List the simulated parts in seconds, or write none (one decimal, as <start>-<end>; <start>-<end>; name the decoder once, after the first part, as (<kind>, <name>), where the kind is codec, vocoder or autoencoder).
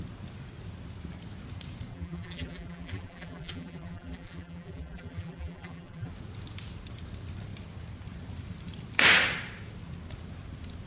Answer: 1.9-6.1 (vocoder, BigVGAN v2)